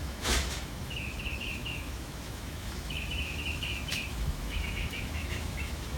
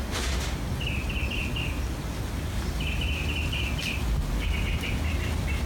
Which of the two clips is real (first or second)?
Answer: second